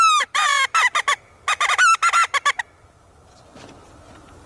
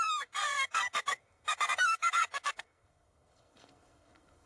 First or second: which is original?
first